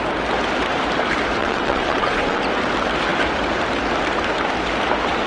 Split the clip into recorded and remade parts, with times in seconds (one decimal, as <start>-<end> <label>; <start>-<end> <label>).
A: 0.0-1.4 recorded; 1.4-2.4 remade; 2.4-5.3 recorded